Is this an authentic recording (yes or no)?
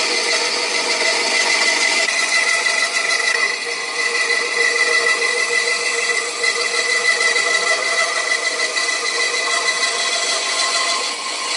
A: no